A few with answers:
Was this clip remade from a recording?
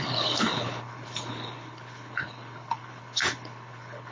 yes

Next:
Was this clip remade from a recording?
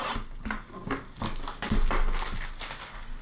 no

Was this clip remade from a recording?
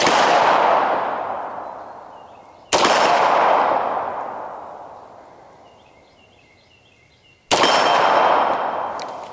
no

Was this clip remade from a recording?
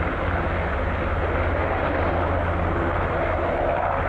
no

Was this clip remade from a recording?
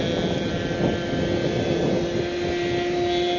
no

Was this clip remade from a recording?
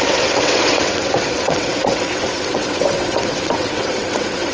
yes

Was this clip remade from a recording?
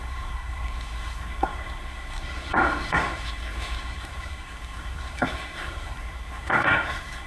yes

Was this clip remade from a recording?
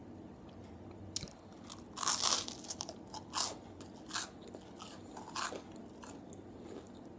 no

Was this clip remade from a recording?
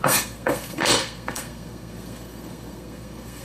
yes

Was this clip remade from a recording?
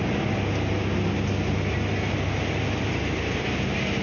no